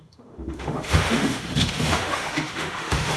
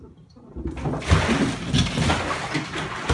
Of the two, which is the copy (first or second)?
first